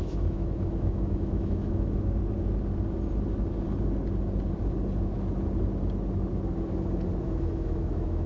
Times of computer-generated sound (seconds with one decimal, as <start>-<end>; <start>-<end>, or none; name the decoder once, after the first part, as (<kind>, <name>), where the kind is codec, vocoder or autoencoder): 0.0-2.2 (autoencoder, DAC-VAE); 7.2-8.3